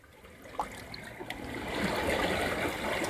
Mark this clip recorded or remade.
recorded